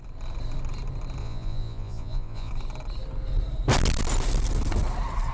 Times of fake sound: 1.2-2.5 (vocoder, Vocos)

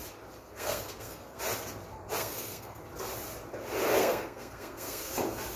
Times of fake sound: 0.4-1.4 (codec, SNAC); 2.2-2.8; 4.0-5.1

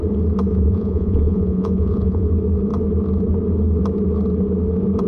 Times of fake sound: 0.5-2.3 (vocoder, Vocos)

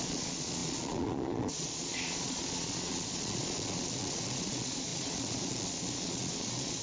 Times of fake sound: 0.0-6.8 (vocoder, Vocos)

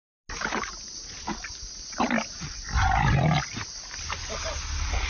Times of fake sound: none

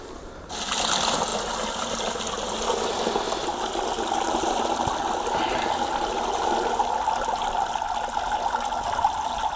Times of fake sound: none